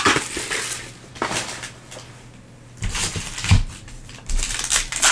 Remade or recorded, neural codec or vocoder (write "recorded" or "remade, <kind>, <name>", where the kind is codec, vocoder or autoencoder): recorded